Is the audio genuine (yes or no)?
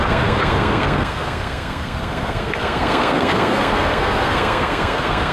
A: no